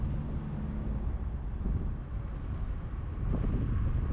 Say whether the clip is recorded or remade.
recorded